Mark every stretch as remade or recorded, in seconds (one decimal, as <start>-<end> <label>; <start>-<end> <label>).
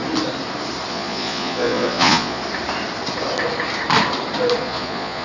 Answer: 0.0-0.9 recorded; 0.9-2.4 remade; 2.4-4.6 recorded; 4.6-5.2 remade